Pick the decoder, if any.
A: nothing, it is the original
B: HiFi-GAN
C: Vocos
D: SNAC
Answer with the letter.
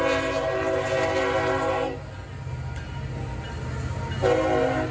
A